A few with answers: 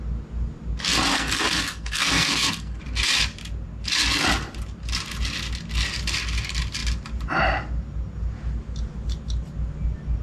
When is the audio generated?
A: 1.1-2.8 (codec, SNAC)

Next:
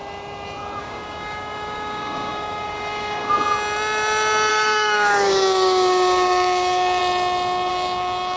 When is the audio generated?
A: 0.8-3.3 (codec, DAC); 4.5-7.0; 7.7-8.4

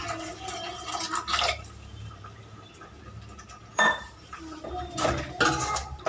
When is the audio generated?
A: 1.3-3.0 (vocoder, BigVGAN v2); 3.7-6.1

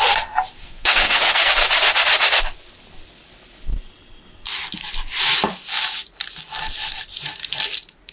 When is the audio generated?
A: 0.6-1.5 (codec, SNAC)

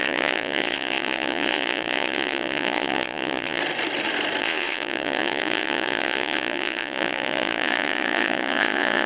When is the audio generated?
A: 0.0-3.6 (vocoder, Vocos); 4.4-9.1

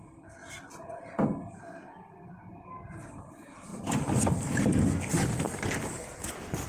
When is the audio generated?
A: none